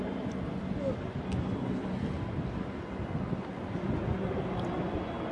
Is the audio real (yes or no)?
yes